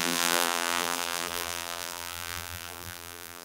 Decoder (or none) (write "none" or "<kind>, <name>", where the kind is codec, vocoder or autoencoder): vocoder, BigVGAN v2